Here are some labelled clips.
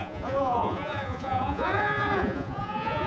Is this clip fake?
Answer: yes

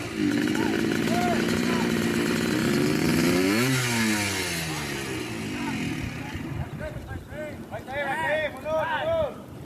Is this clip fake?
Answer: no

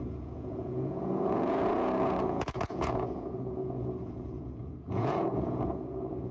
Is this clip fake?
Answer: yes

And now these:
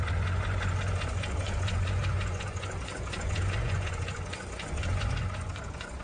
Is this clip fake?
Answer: yes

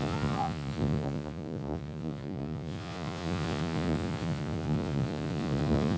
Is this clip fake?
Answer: yes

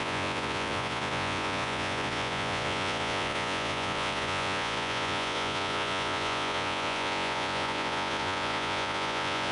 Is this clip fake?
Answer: yes